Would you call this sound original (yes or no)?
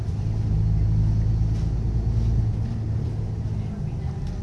yes